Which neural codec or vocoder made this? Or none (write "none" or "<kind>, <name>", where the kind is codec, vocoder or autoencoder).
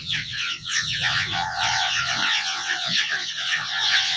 vocoder, WaveNeXt